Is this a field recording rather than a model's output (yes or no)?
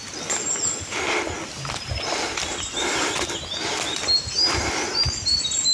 yes